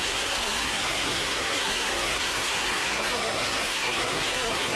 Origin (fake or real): fake